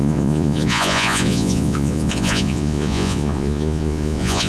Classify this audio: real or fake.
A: fake